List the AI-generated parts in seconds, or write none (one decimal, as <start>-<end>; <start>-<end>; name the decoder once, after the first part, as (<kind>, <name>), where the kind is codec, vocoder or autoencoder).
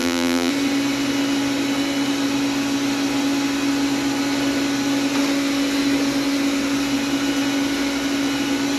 0.0-0.5 (vocoder, BigVGAN v2)